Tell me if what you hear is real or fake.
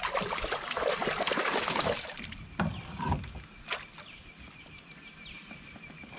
real